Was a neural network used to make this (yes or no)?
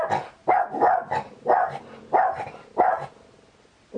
no